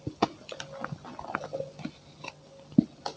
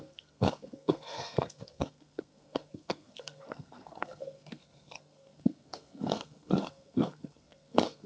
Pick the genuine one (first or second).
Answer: first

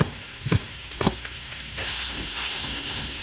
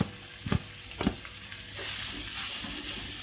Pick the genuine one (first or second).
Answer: second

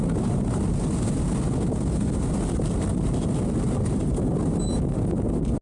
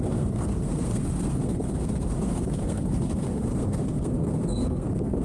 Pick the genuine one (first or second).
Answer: first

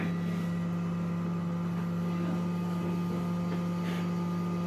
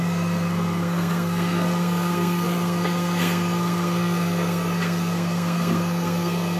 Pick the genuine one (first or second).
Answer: first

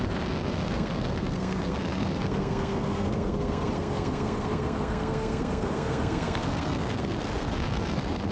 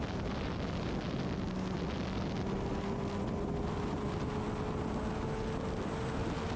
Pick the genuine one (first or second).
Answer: second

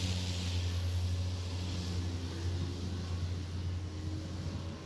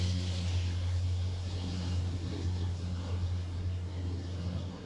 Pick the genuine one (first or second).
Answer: first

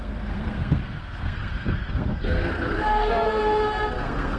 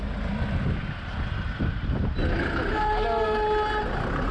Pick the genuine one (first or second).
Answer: second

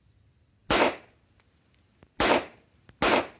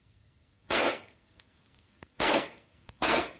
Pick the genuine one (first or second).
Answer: first